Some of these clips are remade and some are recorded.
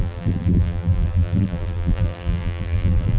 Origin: remade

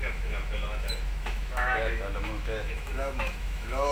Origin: remade